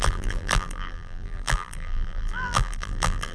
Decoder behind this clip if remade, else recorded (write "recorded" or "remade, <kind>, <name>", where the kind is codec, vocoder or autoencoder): remade, vocoder, BigVGAN v2